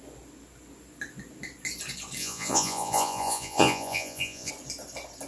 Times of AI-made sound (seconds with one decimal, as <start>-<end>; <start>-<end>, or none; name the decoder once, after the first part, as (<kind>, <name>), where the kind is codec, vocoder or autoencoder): 2.2-4.5 (vocoder, Vocos)